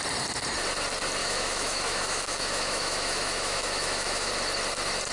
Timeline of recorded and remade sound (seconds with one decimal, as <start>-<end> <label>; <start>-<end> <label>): 0.0-1.2 recorded; 1.2-4.3 remade; 4.3-5.1 recorded